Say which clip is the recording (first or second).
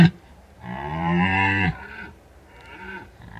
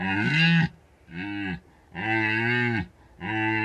second